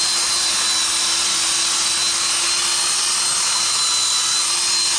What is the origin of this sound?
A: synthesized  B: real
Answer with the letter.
B